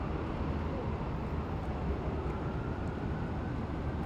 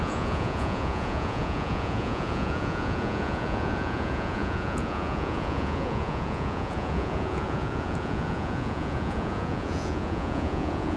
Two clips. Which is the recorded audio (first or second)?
first